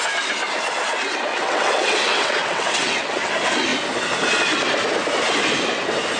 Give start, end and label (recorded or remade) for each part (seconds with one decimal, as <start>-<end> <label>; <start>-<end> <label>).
0.0-1.3 recorded; 1.3-3.3 remade; 3.3-6.2 recorded